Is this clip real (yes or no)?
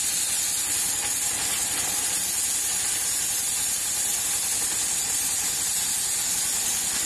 yes